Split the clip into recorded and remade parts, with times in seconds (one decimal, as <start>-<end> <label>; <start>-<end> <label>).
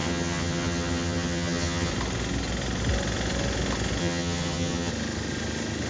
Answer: 0.0-1.9 remade; 1.9-4.0 recorded; 4.0-4.9 remade; 4.9-5.9 recorded